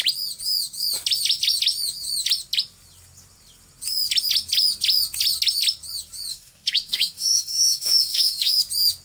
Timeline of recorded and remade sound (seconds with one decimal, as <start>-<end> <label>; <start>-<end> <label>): 0.0-6.3 recorded; 6.3-8.6 remade; 8.6-9.0 recorded